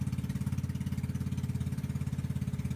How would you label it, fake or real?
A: real